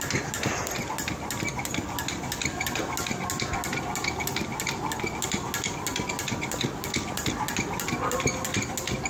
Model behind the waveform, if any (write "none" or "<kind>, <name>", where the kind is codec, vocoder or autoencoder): none